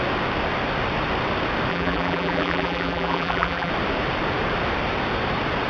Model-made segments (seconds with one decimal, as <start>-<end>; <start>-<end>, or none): 1.7-3.7